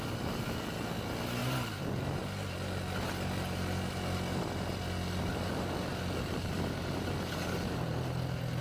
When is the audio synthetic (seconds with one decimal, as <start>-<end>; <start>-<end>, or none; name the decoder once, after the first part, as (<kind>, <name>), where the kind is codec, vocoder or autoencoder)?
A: none

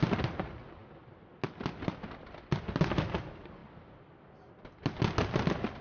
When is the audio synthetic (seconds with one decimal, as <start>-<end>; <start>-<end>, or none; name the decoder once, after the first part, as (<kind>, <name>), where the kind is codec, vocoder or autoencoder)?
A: none

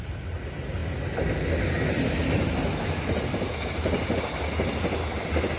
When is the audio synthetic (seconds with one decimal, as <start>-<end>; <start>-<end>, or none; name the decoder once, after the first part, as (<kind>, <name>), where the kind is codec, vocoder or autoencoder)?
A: none

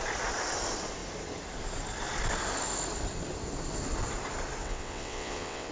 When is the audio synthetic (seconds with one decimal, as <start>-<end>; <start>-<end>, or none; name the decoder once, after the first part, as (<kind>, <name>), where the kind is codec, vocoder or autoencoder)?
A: 4.6-5.7 (vocoder, WaveNeXt)

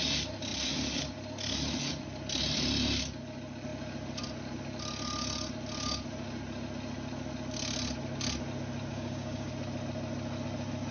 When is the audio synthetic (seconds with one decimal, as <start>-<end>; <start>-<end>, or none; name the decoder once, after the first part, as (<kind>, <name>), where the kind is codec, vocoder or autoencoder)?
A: 8.9-9.5 (codec, DAC)

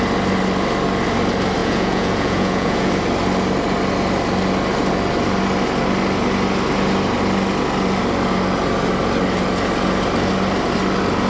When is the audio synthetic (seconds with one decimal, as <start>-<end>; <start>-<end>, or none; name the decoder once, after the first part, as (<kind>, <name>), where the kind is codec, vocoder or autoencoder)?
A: 1.6-2.9 (vocoder, Vocos)

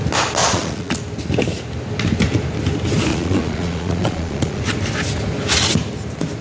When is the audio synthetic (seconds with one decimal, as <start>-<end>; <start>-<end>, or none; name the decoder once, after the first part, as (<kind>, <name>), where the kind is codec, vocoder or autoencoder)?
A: 0.4-1.0 (vocoder, Vocos); 3.1-4.6